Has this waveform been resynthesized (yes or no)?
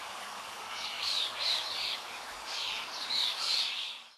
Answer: yes